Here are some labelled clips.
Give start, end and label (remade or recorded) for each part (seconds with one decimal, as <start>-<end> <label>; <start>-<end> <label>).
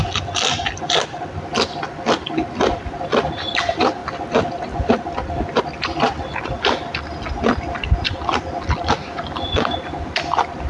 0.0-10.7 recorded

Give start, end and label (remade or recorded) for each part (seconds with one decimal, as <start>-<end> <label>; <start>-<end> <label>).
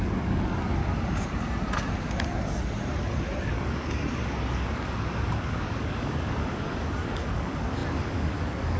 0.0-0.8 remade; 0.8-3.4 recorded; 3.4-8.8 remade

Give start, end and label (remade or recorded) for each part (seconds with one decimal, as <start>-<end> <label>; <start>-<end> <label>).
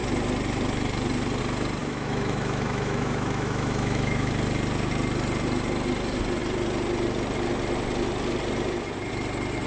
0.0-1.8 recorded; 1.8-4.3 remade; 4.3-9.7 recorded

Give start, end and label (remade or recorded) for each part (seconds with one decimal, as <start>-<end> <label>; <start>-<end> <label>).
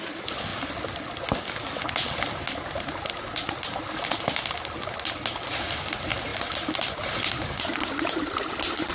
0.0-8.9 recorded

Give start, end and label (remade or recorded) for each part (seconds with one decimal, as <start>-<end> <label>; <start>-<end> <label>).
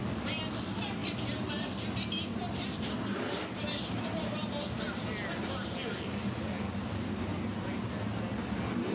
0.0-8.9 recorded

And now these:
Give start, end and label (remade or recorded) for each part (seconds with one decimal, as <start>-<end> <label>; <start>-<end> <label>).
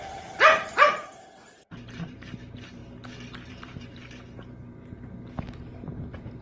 0.0-2.8 remade; 2.8-3.5 recorded; 3.5-6.4 remade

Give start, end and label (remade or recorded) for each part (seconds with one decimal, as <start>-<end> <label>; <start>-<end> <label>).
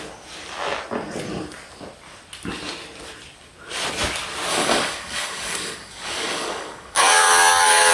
0.0-4.5 recorded; 4.5-7.9 remade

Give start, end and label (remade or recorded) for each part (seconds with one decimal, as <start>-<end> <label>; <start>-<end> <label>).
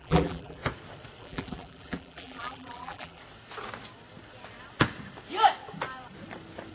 0.0-0.6 remade; 0.6-1.2 recorded; 1.2-3.2 remade; 3.2-6.7 recorded